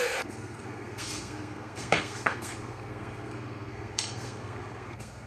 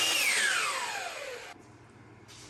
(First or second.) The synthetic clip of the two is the first